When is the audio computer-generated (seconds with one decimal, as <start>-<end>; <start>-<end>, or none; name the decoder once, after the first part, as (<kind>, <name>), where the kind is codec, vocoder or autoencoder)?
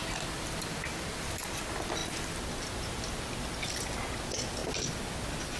none